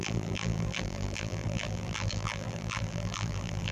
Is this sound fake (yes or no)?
yes